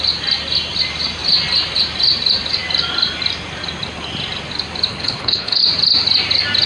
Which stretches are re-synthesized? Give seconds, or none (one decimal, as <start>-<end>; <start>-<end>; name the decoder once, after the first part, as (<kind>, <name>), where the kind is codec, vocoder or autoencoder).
4.9-5.6 (codec, HILCodec)